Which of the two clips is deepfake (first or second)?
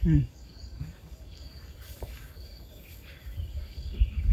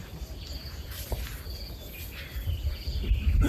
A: first